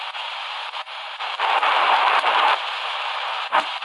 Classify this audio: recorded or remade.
remade